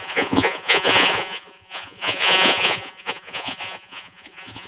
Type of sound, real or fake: fake